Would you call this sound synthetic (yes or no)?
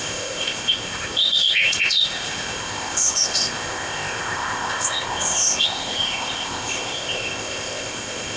yes